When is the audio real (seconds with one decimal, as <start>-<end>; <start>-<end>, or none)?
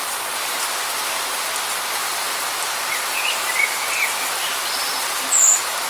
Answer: 0.9-2.0; 5.3-5.9